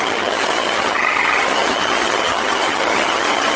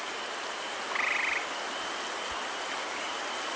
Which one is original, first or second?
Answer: second